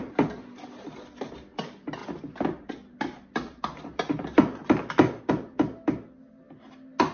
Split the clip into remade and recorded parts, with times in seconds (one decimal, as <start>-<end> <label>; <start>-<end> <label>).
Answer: 0.0-7.1 recorded